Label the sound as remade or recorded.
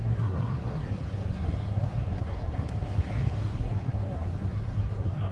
remade